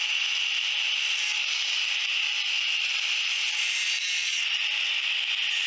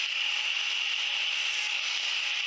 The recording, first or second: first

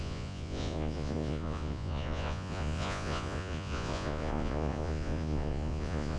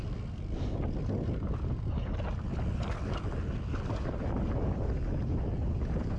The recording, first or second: second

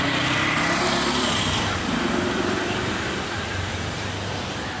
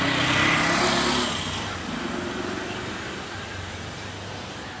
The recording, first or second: second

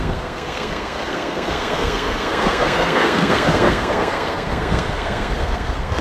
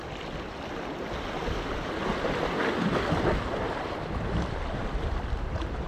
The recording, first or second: second